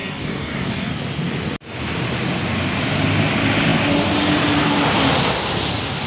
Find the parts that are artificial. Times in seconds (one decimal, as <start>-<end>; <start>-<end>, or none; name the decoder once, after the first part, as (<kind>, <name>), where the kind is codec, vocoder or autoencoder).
0.0-0.9 (codec, DAC)